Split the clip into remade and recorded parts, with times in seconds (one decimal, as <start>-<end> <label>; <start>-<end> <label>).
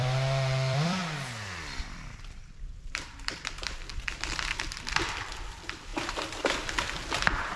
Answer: 0.0-1.0 remade; 1.0-1.8 recorded; 1.8-7.6 remade